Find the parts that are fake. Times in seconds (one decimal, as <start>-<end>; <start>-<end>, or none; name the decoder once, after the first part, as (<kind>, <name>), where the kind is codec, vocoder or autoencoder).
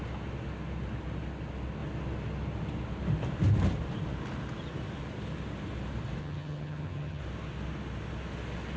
6.2-7.2 (vocoder, HiFi-GAN)